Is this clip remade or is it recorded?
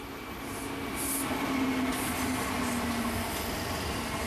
recorded